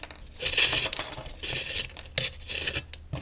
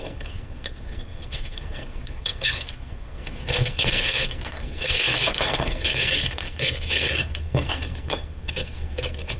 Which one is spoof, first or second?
second